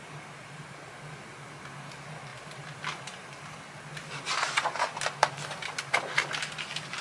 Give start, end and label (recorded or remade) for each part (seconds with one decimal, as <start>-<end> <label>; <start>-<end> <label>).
0.0-7.0 recorded